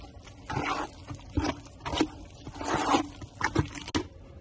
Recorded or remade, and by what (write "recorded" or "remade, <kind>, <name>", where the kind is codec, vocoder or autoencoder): recorded